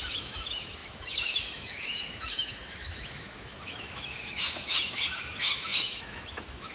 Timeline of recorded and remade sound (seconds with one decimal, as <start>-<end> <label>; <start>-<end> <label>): 0.0-6.7 remade